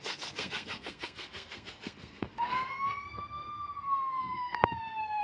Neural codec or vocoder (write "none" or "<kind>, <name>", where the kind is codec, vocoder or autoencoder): codec, SNAC